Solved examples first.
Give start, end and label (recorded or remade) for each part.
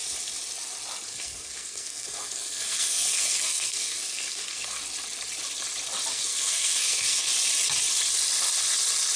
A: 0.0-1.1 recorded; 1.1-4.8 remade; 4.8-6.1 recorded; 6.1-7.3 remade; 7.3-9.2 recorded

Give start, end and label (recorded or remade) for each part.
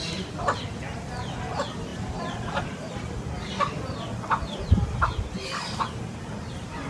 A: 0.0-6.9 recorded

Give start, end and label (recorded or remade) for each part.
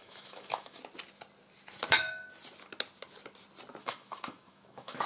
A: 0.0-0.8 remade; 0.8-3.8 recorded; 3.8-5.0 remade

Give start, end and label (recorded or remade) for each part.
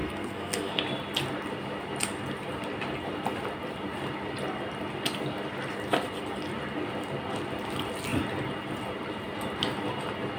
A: 0.0-0.8 remade; 0.8-10.4 recorded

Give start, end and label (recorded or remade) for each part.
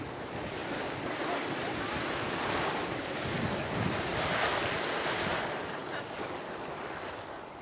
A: 0.0-0.6 recorded; 0.6-5.2 remade; 5.2-7.6 recorded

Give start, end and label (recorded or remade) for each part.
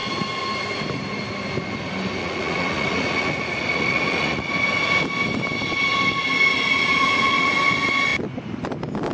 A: 0.0-2.2 recorded; 2.2-4.5 remade; 4.5-6.7 recorded; 6.7-7.5 remade; 7.5-9.1 recorded